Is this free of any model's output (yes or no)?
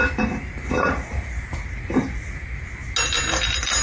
yes